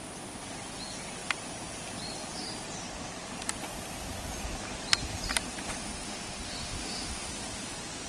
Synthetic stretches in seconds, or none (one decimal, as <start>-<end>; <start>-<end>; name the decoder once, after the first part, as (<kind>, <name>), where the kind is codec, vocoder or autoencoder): 5.8-7.3 (autoencoder, DAC-VAE)